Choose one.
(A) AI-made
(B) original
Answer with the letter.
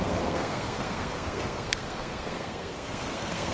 A